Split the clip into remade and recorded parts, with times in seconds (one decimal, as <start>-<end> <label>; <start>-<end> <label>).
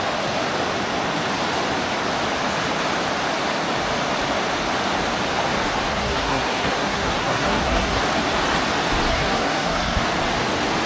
0.0-5.9 recorded; 5.9-8.0 remade; 8.0-9.1 recorded; 9.1-10.0 remade; 10.0-10.9 recorded